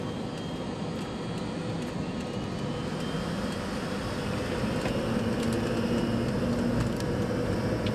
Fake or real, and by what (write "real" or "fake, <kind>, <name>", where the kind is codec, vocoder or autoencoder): real